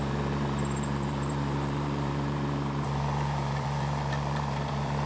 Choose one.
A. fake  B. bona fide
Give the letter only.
A